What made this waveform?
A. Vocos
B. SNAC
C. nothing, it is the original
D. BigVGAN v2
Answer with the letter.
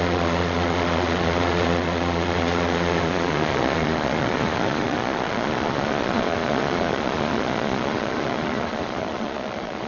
A